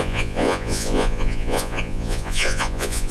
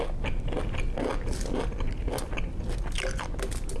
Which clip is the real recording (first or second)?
second